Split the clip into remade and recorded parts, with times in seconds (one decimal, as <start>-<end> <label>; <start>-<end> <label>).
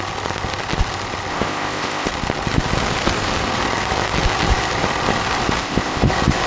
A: 0.0-1.3 recorded; 1.3-2.1 remade; 2.1-5.6 recorded; 5.6-6.1 remade; 6.1-6.5 recorded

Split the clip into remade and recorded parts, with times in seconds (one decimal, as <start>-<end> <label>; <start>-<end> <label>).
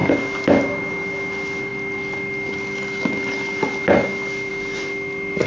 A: 0.0-5.5 recorded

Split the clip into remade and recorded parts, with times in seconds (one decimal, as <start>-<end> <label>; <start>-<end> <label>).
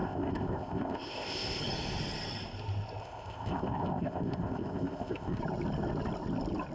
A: 0.0-1.6 remade; 1.6-3.0 recorded; 3.0-5.4 remade; 5.4-6.7 recorded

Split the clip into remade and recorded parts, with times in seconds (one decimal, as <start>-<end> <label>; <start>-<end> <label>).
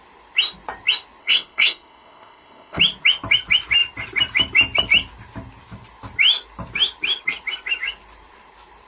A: 0.0-1.2 recorded; 1.2-2.8 remade; 2.8-8.9 recorded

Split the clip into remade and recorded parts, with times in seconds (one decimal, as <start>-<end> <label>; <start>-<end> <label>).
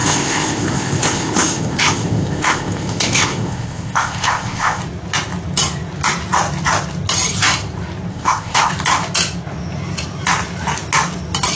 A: 0.0-4.8 remade; 4.8-8.1 recorded; 8.1-8.7 remade; 8.7-11.6 recorded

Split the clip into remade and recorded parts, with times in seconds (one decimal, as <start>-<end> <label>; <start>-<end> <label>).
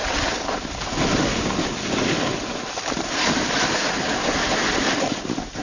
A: 0.0-5.6 recorded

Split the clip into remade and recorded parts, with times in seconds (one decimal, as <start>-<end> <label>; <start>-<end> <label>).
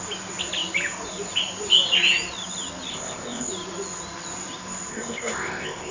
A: 0.0-2.9 recorded; 2.9-3.5 remade; 3.5-4.9 recorded; 4.9-5.9 remade